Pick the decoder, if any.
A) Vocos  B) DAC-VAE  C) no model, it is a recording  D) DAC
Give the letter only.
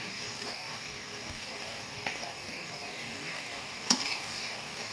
D